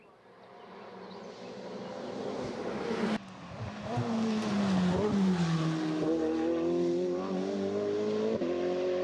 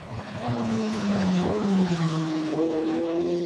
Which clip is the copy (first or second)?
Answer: second